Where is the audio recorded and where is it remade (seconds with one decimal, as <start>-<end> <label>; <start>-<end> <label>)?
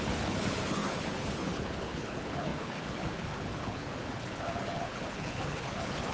0.0-6.1 remade